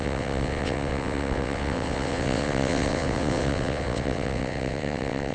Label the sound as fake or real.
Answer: fake